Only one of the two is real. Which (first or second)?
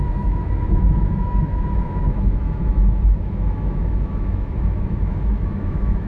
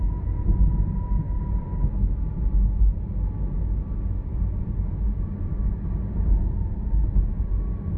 second